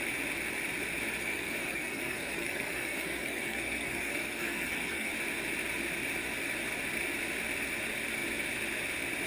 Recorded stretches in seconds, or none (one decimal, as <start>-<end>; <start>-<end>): 0.0-1.2; 5.1-9.3